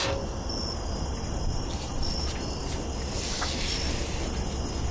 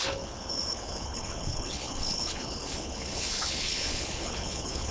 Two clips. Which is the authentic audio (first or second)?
first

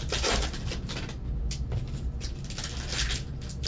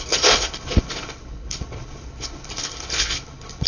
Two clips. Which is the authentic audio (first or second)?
first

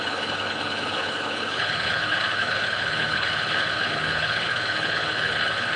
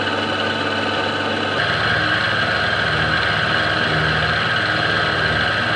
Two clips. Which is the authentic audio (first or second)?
second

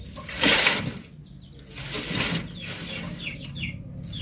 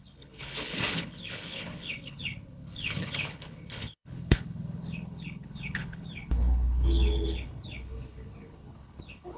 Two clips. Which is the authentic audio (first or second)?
first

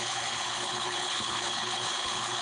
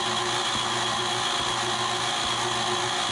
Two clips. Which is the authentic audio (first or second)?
second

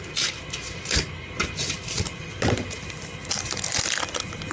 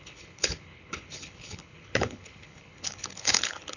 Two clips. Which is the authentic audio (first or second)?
first